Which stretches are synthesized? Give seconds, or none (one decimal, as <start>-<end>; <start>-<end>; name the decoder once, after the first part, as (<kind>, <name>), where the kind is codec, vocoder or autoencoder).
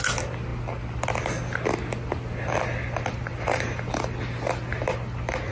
none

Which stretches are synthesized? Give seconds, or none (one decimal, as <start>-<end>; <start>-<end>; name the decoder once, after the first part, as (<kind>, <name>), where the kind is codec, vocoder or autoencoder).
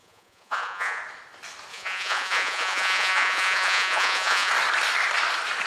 0.0-1.0 (vocoder, Vocos); 1.7-4.5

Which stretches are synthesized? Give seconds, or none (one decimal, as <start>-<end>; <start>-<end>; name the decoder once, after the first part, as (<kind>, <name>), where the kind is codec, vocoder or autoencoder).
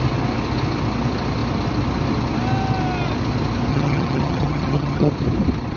3.7-5.1 (vocoder, HiFi-GAN)